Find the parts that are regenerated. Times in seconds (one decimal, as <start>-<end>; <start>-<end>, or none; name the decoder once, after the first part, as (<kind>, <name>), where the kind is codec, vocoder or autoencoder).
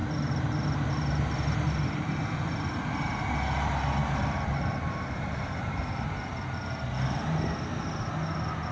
0.0-2.1 (vocoder, BigVGAN v2); 4.0-5.8